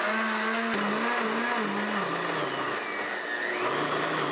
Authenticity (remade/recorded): recorded